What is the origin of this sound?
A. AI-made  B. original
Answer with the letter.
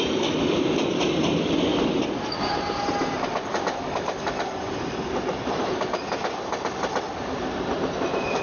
B